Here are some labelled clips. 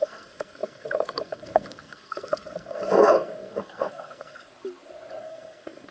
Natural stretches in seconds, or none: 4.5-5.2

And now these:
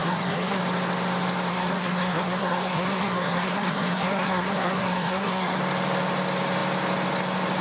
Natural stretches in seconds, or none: 0.6-1.5; 5.6-7.6

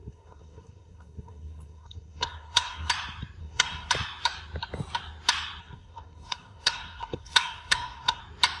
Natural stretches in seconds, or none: 2.9-3.4; 3.9-5.6; 8.2-8.6

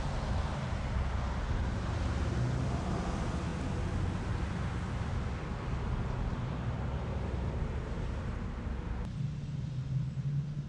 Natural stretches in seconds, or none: 0.0-10.7

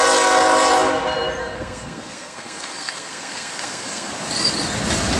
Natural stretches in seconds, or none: 0.0-1.4; 4.1-5.2

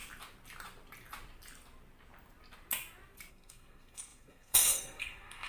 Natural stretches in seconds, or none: 0.0-3.3

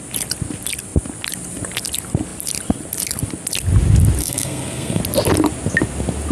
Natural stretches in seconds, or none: 0.0-4.2; 5.0-6.3